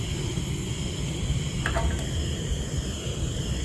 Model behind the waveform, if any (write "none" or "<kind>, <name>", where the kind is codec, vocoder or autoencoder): none